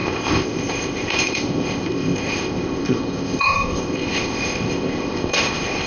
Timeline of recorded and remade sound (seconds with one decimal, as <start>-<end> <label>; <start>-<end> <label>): 0.0-5.9 remade